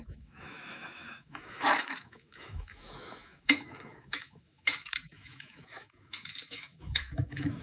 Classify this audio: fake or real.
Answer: fake